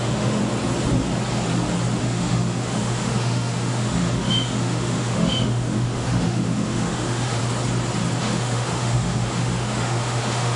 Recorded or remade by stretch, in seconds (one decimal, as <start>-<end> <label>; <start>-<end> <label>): 0.0-0.4 remade; 0.4-2.0 recorded; 2.0-7.4 remade; 7.4-8.2 recorded; 8.2-10.6 remade

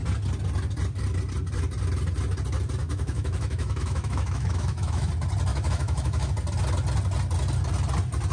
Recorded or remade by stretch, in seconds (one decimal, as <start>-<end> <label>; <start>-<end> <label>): 0.0-2.8 recorded; 2.8-5.1 remade; 5.1-5.5 recorded; 5.5-6.3 remade; 6.3-8.3 recorded